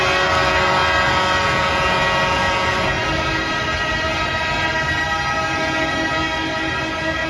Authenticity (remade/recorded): recorded